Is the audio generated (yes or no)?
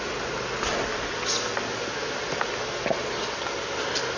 no